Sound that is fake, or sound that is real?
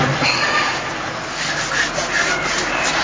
real